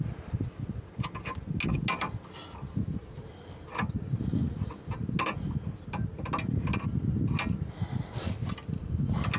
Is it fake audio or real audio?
real